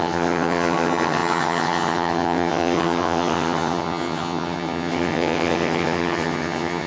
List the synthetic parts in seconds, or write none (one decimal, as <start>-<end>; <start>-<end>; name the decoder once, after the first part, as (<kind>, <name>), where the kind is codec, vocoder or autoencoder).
0.0-6.9 (vocoder, HiFi-GAN)